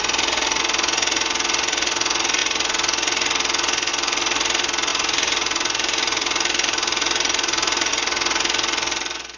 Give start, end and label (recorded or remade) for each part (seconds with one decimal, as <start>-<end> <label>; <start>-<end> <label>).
0.0-4.9 recorded; 4.9-7.9 remade; 7.9-9.4 recorded

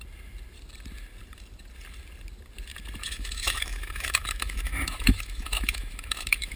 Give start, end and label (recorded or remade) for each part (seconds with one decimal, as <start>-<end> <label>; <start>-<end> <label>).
0.0-3.0 recorded; 3.0-6.6 remade

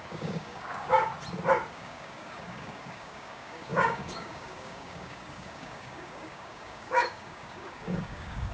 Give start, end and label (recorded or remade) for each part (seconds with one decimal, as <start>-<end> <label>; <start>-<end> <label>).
0.0-1.1 remade; 1.1-1.7 recorded; 1.7-8.5 remade